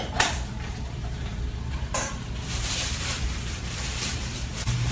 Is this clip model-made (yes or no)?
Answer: yes